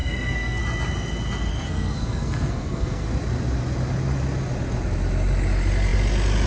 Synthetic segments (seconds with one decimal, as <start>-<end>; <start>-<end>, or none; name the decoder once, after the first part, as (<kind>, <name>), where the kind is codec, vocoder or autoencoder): 0.0-0.6 (codec, SNAC); 1.5-3.1